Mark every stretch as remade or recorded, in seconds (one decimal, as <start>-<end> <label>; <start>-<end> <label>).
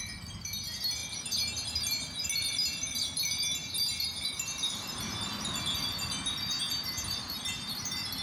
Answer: 0.0-8.2 recorded